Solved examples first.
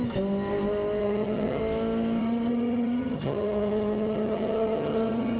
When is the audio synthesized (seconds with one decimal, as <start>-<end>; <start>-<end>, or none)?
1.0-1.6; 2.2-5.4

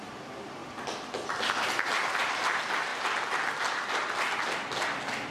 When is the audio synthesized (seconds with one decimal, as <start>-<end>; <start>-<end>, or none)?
none

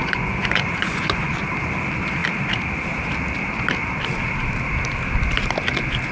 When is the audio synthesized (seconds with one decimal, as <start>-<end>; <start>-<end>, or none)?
0.0-1.3

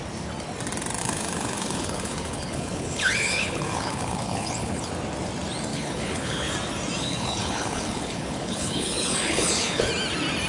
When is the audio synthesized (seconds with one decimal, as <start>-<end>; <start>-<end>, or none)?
1.0-4.9; 5.7-6.5; 7.0-9.9

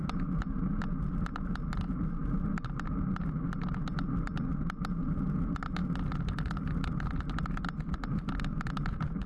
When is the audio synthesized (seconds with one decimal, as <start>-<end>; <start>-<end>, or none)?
none